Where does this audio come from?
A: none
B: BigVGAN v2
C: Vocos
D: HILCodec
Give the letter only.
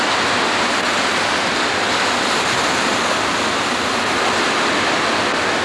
A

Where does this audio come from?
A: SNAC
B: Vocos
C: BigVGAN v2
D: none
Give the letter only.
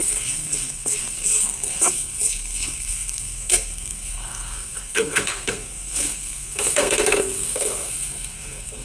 A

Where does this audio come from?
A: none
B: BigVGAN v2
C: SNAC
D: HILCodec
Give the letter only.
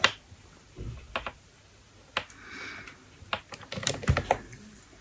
A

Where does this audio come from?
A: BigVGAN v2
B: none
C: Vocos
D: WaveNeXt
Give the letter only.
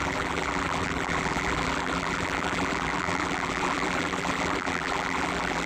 A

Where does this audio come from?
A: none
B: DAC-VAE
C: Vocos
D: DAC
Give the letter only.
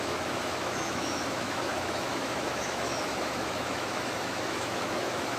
B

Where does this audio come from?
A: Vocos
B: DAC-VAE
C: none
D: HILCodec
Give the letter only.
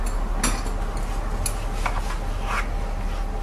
C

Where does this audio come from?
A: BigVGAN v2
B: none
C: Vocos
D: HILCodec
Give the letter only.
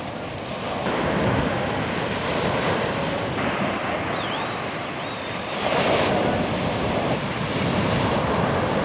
A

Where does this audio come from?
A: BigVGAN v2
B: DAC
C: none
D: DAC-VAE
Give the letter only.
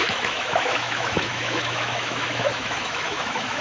D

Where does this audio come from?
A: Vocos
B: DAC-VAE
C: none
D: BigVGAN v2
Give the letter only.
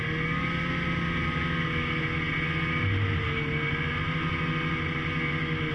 C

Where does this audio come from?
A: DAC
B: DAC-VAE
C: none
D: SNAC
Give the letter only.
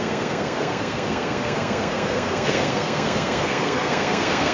D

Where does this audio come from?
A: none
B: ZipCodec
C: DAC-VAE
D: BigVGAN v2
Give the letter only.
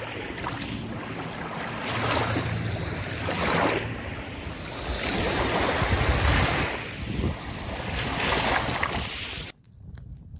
A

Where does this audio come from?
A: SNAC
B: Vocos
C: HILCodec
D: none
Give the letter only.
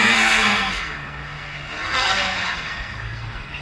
A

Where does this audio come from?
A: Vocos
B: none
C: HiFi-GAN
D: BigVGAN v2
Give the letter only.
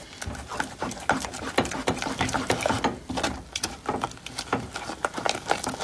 B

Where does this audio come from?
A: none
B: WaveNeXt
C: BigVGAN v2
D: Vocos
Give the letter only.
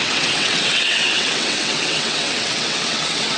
B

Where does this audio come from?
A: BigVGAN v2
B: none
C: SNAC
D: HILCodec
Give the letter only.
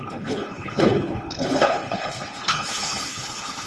D